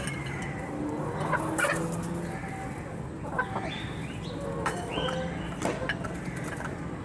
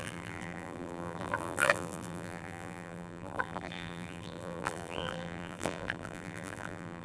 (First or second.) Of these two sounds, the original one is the first